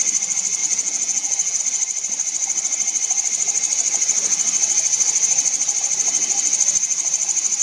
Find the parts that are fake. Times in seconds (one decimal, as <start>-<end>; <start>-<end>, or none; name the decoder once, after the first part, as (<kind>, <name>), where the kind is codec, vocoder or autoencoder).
0.6-1.6 (vocoder, Vocos)